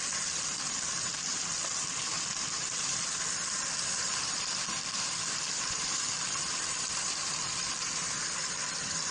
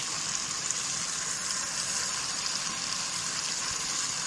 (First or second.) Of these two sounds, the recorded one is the second